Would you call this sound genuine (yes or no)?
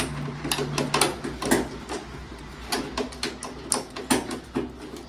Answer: yes